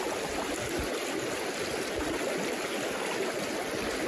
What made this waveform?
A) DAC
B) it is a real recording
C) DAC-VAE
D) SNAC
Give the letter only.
B